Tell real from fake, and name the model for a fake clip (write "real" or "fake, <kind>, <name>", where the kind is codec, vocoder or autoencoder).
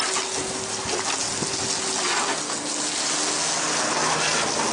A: real